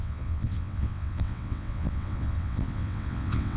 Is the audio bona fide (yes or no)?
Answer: no